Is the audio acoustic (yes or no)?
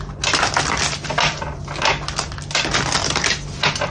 yes